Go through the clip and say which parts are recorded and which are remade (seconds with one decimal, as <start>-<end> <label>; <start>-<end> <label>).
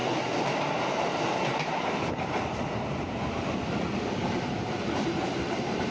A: 0.0-4.2 recorded; 4.2-5.9 remade